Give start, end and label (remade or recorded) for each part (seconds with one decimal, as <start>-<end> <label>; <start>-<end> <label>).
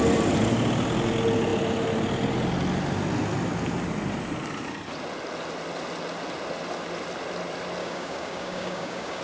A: 0.0-7.8 recorded; 7.8-9.2 remade